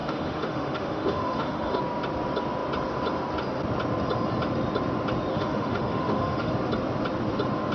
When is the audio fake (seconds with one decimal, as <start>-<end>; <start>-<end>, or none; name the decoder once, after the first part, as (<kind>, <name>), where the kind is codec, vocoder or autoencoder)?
0.0-1.8 (autoencoder, DAC-VAE); 5.3-6.5

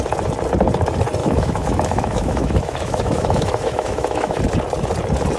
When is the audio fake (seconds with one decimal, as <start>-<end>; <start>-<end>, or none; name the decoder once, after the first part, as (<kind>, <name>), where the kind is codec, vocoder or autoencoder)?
1.2-4.4 (autoencoder, DAC-VAE)

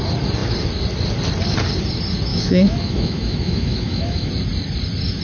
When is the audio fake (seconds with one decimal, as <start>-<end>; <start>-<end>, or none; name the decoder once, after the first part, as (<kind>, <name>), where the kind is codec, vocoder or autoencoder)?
2.3-4.3 (autoencoder, DAC-VAE)

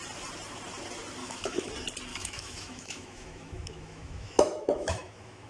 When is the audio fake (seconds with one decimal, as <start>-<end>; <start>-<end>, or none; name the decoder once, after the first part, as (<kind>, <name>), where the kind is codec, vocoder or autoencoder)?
1.2-1.7 (autoencoder, DAC-VAE); 2.1-5.5

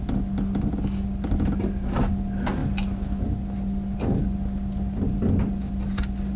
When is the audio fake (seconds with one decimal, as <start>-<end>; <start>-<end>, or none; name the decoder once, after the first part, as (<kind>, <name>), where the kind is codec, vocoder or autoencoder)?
none

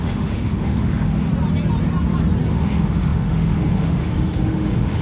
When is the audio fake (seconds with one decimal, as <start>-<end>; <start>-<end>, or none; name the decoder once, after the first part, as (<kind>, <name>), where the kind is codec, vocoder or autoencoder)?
0.0-1.3 (autoencoder, DAC-VAE); 2.5-5.0

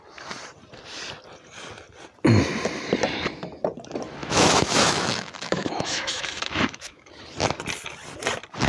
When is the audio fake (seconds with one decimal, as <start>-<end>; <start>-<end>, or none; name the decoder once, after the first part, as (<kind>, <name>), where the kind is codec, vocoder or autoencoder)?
4.2-7.1 (autoencoder, DAC-VAE)